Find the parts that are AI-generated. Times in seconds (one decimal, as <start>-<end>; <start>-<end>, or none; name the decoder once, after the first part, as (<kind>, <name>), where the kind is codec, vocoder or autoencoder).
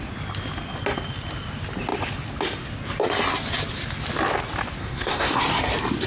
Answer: 4.8-5.4 (codec, SNAC)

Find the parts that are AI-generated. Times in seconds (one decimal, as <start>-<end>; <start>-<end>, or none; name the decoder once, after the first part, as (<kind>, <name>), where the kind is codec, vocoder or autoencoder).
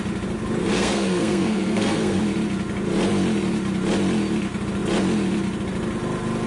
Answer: 0.6-2.2 (codec, SNAC)